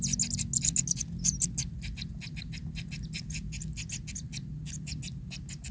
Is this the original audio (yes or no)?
yes